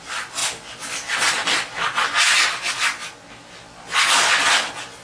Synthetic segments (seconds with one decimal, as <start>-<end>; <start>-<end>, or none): none